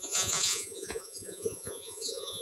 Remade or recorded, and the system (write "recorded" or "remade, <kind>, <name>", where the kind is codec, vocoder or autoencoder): remade, vocoder, Vocos